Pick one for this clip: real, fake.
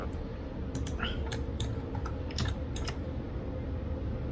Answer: real